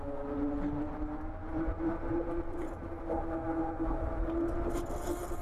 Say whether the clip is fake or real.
real